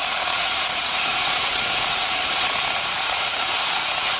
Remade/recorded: remade